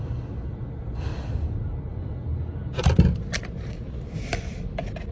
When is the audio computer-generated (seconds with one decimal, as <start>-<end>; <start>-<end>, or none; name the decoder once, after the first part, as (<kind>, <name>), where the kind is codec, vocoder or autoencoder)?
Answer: none